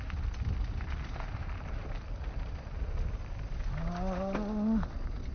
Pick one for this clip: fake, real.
real